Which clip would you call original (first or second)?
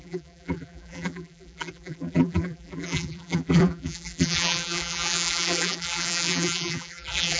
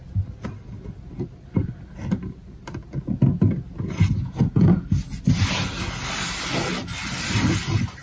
second